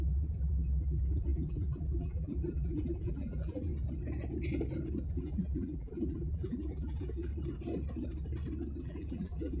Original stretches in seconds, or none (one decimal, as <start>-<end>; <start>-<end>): 3.7-5.1; 7.3-8.8